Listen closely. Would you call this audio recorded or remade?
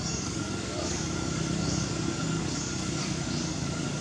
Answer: remade